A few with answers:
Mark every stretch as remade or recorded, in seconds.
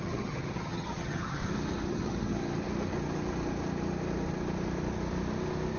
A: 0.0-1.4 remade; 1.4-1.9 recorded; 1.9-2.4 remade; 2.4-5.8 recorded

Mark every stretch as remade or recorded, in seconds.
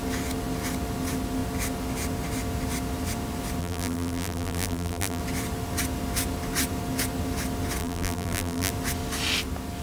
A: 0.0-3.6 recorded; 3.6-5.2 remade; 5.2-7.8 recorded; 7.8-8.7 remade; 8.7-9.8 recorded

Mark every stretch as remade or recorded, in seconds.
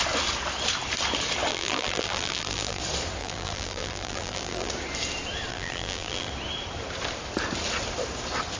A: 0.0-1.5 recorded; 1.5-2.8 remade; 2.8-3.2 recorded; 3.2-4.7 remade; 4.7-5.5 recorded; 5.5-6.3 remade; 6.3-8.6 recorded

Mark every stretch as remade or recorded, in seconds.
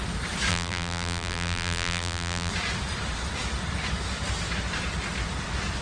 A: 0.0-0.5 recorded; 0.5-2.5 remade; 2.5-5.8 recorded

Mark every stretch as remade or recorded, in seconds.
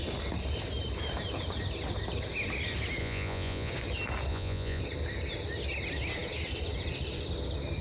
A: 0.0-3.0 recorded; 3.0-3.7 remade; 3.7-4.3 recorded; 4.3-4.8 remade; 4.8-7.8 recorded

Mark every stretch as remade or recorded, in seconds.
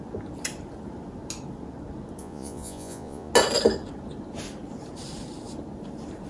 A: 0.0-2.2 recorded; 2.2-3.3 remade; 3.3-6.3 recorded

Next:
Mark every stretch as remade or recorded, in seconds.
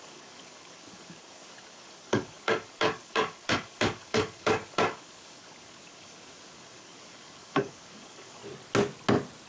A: 0.0-8.4 remade; 8.4-9.5 recorded